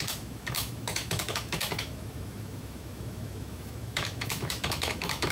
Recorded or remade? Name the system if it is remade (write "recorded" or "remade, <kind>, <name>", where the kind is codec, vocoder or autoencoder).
remade, autoencoder, DAC-VAE